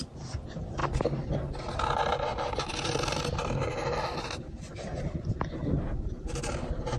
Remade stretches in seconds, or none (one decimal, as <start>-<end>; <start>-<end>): none